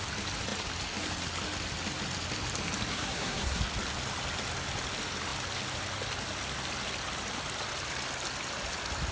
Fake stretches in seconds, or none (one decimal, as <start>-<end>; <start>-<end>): 2.9-3.6